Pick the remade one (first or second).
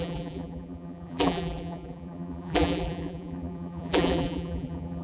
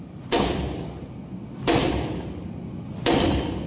first